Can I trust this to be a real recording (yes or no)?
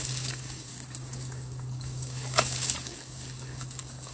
no